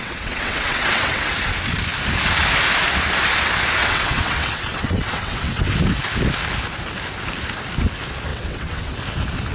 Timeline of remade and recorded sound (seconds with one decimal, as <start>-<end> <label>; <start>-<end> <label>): 0.0-1.3 remade; 1.3-3.8 recorded; 3.8-5.7 remade; 5.7-8.3 recorded; 8.3-8.9 remade; 8.9-9.5 recorded